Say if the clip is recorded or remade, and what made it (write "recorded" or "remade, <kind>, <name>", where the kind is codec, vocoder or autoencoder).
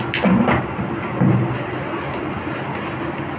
recorded